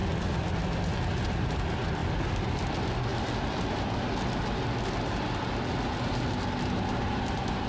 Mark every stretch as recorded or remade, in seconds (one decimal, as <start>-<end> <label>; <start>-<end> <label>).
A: 0.0-7.7 recorded